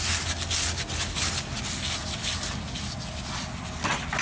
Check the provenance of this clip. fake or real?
real